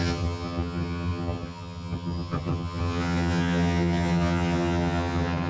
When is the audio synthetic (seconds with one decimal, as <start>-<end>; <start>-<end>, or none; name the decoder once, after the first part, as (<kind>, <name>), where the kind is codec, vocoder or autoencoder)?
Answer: 0.0-5.5 (vocoder, HiFi-GAN)